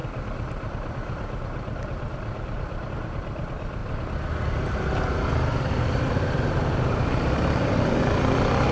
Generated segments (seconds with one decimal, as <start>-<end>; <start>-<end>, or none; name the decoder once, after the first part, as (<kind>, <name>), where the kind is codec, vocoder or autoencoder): none